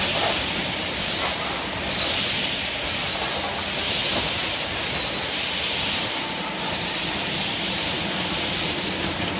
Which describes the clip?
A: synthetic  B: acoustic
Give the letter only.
B